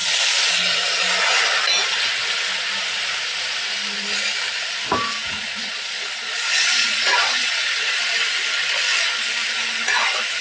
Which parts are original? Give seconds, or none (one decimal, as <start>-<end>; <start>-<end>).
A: 0.0-5.2; 8.0-10.4